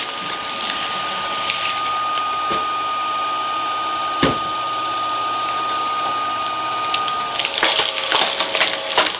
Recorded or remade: recorded